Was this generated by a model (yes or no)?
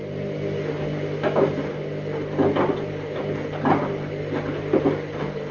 no